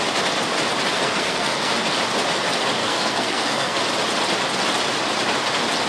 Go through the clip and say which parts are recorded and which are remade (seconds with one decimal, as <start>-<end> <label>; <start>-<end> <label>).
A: 0.0-0.9 recorded; 0.9-1.7 remade; 1.7-2.8 recorded; 2.8-3.8 remade; 3.8-5.9 recorded